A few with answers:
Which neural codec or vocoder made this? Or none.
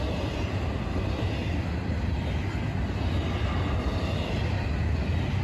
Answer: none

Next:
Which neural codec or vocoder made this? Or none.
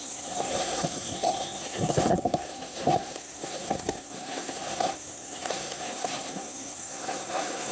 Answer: codec, SNAC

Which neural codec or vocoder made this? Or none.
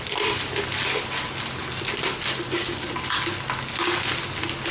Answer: none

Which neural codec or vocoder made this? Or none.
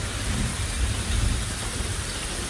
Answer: none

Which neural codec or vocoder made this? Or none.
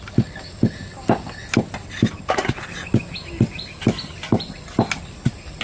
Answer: none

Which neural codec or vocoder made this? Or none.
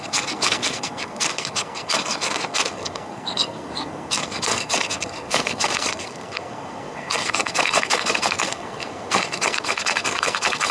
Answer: codec, SNAC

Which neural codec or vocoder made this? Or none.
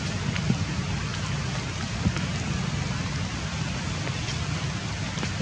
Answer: none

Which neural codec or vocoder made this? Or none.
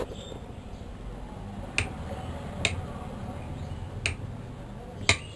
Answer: none